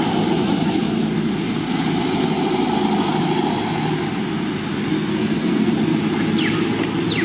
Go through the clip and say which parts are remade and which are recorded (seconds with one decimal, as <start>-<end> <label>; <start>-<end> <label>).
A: 0.0-5.1 recorded; 5.1-5.7 remade; 5.7-7.2 recorded